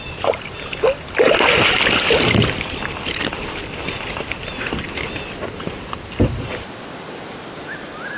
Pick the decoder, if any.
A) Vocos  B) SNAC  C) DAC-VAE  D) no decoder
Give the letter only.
D